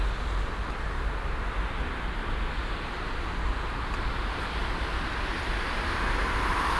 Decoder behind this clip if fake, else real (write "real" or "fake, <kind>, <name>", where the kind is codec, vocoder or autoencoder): fake, vocoder, BigVGAN v2